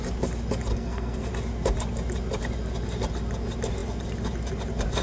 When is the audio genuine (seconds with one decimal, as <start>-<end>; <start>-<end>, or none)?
0.0-0.7; 1.3-5.0